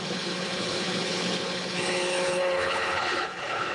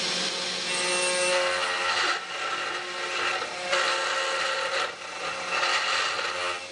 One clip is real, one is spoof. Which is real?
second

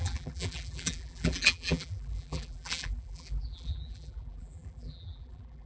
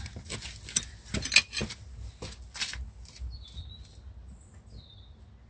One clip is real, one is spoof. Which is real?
second